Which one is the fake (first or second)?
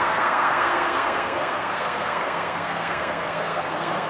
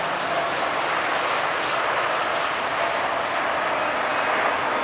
first